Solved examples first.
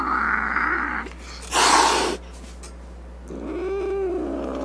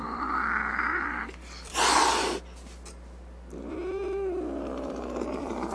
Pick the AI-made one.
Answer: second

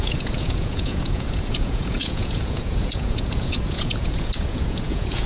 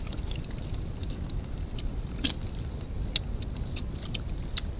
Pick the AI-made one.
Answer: first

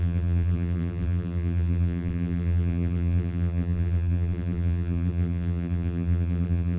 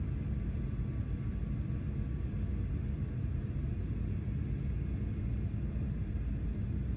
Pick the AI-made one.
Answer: first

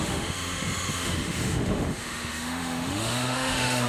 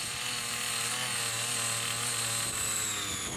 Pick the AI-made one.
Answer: first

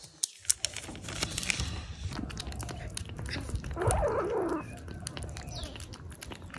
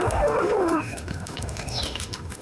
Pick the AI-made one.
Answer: second